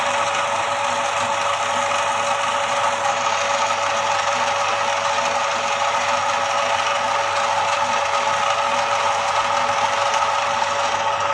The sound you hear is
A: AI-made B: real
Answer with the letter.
B